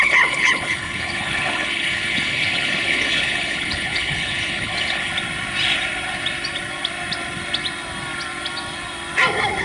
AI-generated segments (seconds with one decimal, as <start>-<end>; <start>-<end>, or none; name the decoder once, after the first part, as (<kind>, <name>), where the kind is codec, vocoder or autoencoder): 0.0-5.1 (codec, HILCodec)